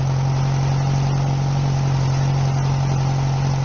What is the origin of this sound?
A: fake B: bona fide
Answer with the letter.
B